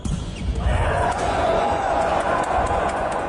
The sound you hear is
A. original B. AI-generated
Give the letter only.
B